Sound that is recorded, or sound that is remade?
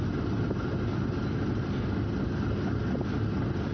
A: recorded